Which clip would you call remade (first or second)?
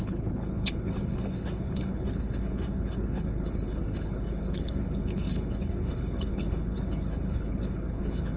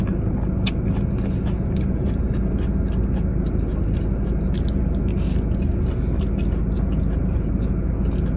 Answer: first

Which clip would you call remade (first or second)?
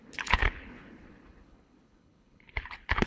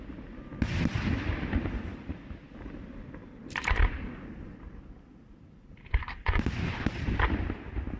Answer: first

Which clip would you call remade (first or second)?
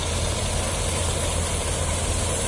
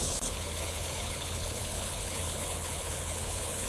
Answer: second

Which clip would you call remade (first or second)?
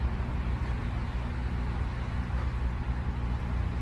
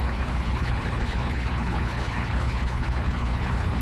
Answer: second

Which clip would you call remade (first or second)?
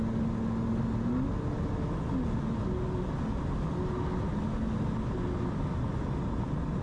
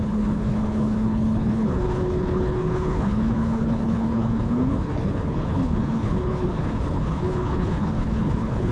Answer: second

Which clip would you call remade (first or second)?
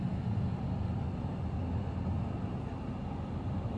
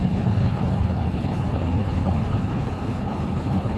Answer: second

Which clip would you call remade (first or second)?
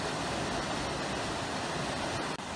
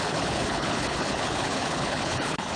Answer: second